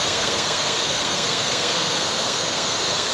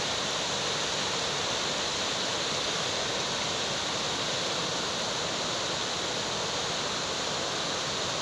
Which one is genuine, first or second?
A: second